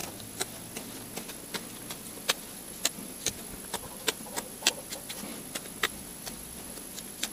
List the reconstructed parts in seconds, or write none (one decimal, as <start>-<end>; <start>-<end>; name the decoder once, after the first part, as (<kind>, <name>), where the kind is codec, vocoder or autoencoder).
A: 1.9-5.3 (vocoder, BigVGAN v2); 5.8-7.3

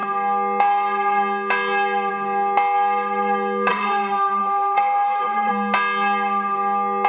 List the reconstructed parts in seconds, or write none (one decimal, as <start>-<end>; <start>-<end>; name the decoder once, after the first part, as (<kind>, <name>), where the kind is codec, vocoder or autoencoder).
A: 3.7-5.5 (autoencoder, DAC-VAE)

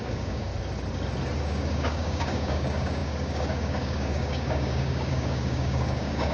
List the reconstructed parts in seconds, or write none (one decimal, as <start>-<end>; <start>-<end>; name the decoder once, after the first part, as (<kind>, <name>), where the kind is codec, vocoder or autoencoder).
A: 0.0-0.5 (codec, DAC); 1.4-6.3

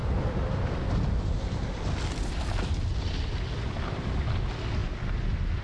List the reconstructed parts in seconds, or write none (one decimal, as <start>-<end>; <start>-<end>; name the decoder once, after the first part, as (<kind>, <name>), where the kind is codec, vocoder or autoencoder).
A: none